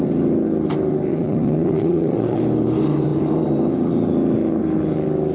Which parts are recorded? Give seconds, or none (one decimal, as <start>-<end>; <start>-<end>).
0.0-1.1; 2.4-5.3